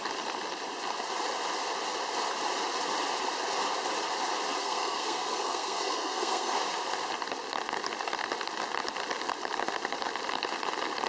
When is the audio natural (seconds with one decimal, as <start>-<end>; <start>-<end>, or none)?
0.0-4.6; 6.5-11.1